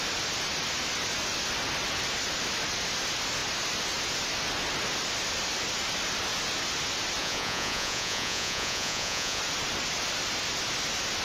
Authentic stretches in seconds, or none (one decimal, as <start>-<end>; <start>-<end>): 0.0-7.2; 9.4-11.2